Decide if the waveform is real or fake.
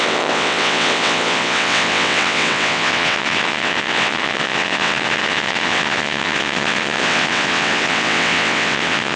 fake